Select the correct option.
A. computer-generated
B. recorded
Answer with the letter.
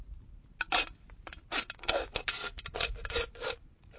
B